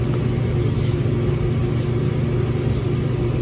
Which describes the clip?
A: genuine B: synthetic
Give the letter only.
A